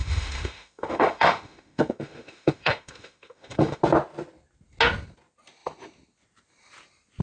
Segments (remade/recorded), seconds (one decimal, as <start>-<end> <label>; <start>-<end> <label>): 0.0-3.8 remade; 3.8-7.2 recorded